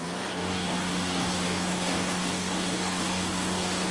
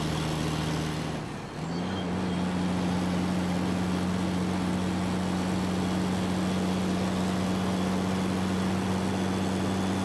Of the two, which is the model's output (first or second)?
first